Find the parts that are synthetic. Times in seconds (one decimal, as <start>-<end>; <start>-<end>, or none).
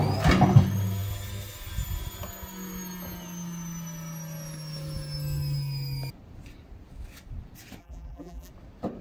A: 7.8-8.5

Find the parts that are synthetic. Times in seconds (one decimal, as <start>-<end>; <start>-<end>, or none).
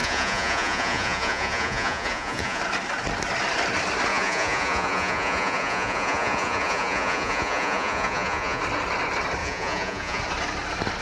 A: 0.0-2.6; 4.1-8.6; 9.4-10.2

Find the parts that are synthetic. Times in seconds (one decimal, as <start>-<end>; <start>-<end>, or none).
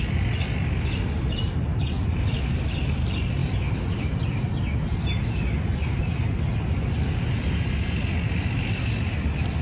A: none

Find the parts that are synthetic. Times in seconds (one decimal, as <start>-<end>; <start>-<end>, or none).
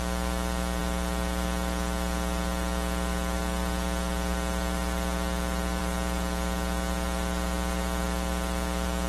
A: none